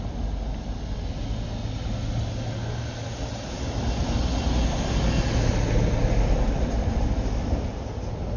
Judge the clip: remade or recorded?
recorded